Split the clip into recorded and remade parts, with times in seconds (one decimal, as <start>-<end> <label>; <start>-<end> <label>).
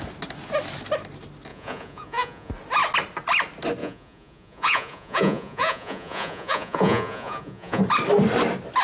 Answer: 0.0-1.5 recorded; 1.5-2.5 remade; 2.5-3.8 recorded; 3.8-7.8 remade; 7.8-8.8 recorded